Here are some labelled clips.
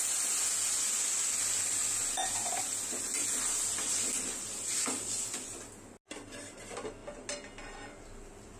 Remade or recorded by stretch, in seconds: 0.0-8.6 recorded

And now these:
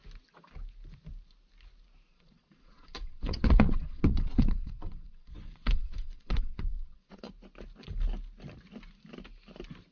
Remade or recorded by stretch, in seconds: 0.0-2.1 recorded; 2.1-7.3 remade; 7.3-9.9 recorded